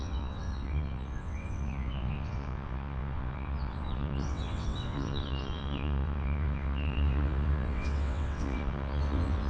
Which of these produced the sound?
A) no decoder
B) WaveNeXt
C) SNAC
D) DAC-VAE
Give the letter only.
B